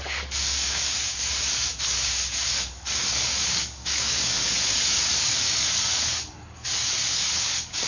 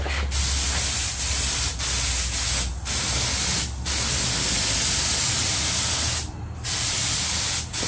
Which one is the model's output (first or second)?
first